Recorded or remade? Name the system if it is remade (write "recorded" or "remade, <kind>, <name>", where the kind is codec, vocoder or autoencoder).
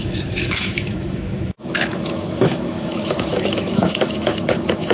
remade, autoencoder, DAC-VAE